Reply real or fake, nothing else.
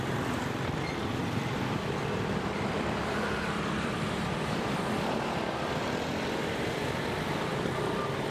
fake